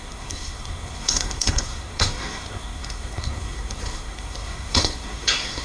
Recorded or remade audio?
remade